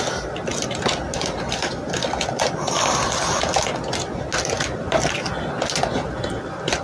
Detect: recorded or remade recorded